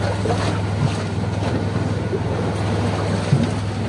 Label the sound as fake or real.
real